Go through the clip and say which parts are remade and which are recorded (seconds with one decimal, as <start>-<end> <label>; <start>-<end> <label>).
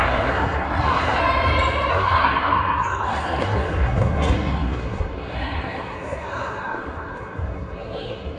0.0-1.2 remade; 1.2-1.9 recorded; 1.9-8.4 remade